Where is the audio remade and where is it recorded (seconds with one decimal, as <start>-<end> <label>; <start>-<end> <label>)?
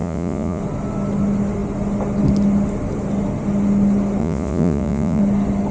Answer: 0.0-0.6 remade; 0.6-4.2 recorded; 4.2-5.2 remade; 5.2-5.7 recorded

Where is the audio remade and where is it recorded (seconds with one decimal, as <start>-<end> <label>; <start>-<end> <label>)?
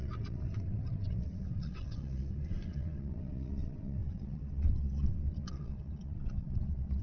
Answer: 0.0-7.0 remade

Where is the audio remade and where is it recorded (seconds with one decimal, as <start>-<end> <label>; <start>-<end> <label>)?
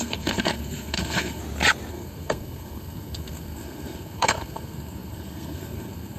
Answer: 0.0-1.4 remade; 1.4-1.9 recorded; 1.9-6.2 remade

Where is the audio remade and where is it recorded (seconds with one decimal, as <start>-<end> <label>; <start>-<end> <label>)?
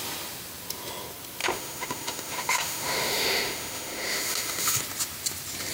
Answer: 0.0-1.4 recorded; 1.4-4.8 remade; 4.8-5.7 recorded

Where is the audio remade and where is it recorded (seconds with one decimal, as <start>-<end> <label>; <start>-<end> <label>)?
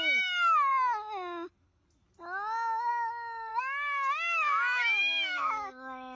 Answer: 0.0-0.7 remade; 0.7-2.9 recorded; 2.9-6.2 remade